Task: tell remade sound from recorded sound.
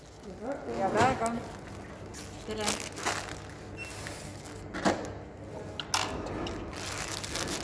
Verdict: recorded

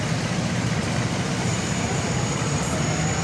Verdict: recorded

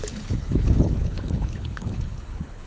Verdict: remade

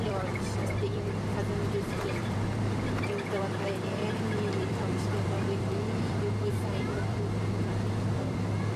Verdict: remade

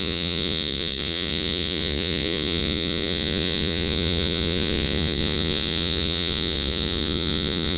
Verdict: remade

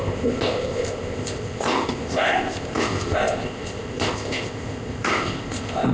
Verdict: remade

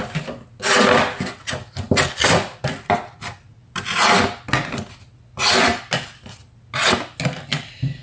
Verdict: recorded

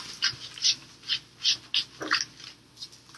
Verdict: recorded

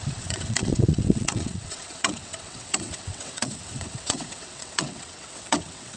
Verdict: remade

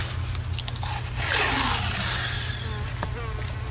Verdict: recorded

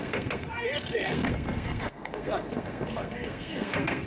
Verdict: remade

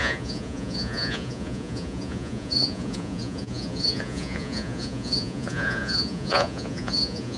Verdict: remade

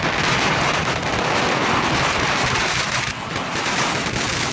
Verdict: recorded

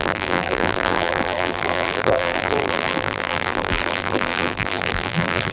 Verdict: remade